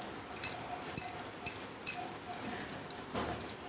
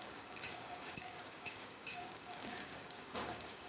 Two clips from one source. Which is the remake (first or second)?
second